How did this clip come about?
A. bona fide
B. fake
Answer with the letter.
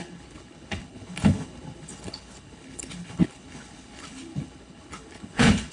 B